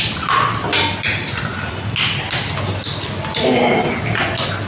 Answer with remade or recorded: recorded